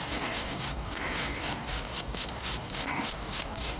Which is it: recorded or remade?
remade